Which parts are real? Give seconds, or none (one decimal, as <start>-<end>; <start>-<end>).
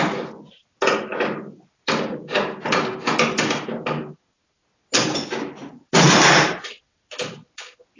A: 0.0-1.1; 1.9-8.0